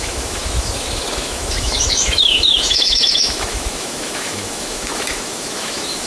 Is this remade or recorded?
remade